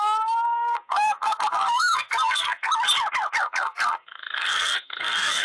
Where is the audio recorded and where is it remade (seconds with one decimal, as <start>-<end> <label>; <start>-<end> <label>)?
0.0-2.7 remade; 2.7-3.4 recorded; 3.4-5.4 remade

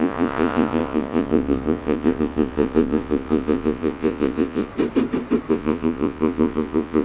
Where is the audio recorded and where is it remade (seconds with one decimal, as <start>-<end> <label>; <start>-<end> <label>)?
0.0-4.7 remade; 4.7-5.5 recorded; 5.5-7.0 remade

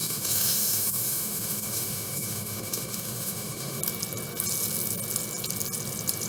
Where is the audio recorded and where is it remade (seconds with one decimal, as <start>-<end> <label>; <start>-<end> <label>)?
0.0-3.8 remade; 3.8-6.3 recorded

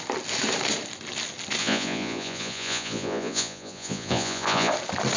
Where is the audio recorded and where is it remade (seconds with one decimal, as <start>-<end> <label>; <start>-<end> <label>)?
0.0-1.6 recorded; 1.6-4.7 remade; 4.7-5.2 recorded

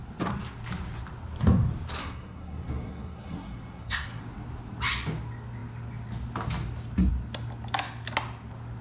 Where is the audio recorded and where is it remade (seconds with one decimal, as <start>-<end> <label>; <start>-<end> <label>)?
0.0-2.0 recorded; 2.0-4.2 remade; 4.2-8.8 recorded

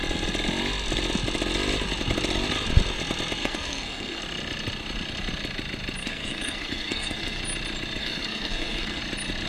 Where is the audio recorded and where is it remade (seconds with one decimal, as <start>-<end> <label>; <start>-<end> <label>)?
0.0-3.4 recorded; 3.4-4.2 remade; 4.2-6.0 recorded; 6.0-7.4 remade; 7.4-8.0 recorded; 8.0-9.0 remade; 9.0-9.5 recorded

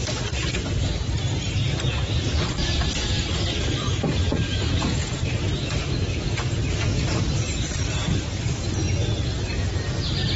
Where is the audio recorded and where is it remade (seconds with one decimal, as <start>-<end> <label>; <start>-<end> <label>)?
0.0-4.3 recorded; 4.3-5.2 remade; 5.2-10.4 recorded

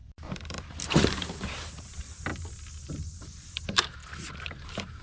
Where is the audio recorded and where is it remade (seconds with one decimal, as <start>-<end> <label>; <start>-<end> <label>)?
0.0-2.3 remade; 2.3-2.9 recorded; 2.9-4.0 remade; 4.0-4.5 recorded; 4.5-5.0 remade